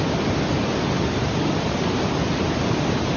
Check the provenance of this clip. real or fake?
fake